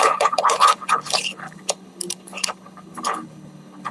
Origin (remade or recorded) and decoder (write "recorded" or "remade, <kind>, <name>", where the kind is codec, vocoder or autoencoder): remade, codec, HILCodec